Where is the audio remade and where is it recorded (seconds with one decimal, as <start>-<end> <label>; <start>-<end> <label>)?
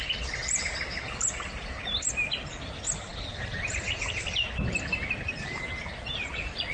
0.0-6.7 recorded